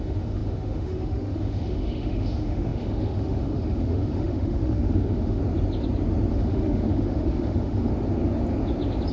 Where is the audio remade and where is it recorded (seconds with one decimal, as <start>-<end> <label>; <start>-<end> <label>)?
0.0-5.4 remade; 5.4-6.3 recorded; 6.3-7.9 remade; 7.9-9.1 recorded